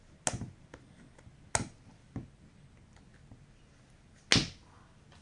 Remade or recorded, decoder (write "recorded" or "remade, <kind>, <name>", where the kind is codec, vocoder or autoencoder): recorded